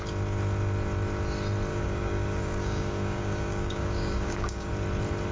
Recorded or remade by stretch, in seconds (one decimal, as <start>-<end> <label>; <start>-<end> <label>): 0.0-1.7 recorded; 1.7-4.7 remade; 4.7-5.3 recorded